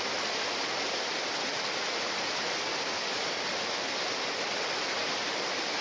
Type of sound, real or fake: real